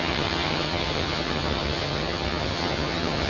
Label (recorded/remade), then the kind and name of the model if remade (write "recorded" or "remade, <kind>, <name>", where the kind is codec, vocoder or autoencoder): remade, vocoder, HiFi-GAN